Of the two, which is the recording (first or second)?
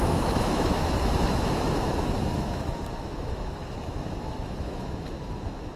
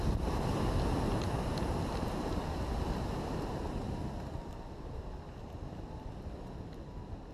second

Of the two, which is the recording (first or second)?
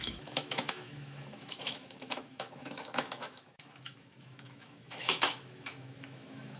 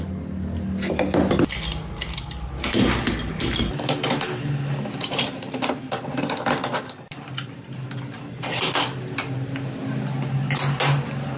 second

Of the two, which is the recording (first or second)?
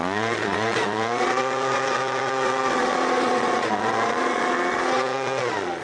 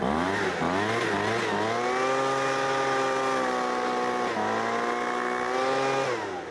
second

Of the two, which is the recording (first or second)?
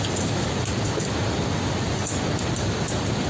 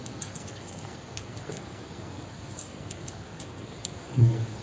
first